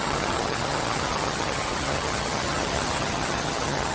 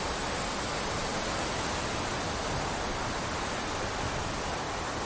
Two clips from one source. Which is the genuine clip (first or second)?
second